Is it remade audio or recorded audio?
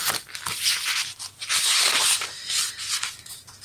recorded